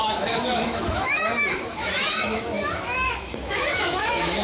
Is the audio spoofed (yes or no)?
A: yes